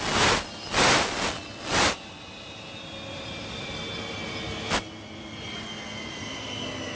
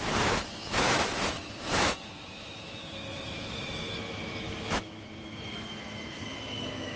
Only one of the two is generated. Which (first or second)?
second